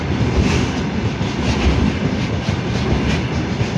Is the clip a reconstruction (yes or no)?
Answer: no